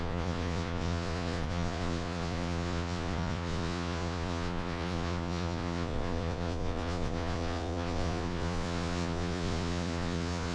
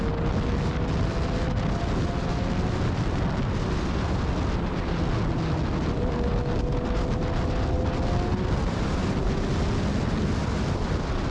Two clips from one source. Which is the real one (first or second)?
second